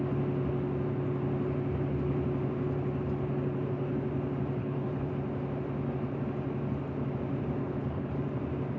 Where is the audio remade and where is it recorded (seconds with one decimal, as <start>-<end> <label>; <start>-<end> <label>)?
0.0-4.6 recorded; 4.6-5.1 remade; 5.1-7.6 recorded; 7.6-8.1 remade; 8.1-8.8 recorded